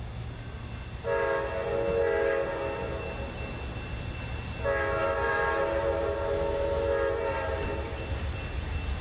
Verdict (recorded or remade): recorded